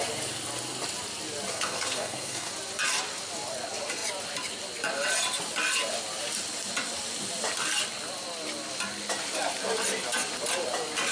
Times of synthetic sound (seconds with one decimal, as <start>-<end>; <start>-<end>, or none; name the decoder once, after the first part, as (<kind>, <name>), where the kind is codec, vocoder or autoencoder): 1.5-2.5 (codec, SNAC)